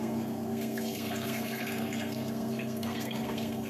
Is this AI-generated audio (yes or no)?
yes